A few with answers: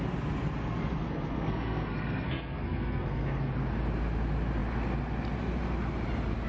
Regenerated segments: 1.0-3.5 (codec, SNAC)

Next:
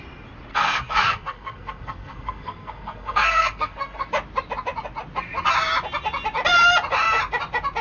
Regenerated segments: 0.5-4.1 (codec, SNAC)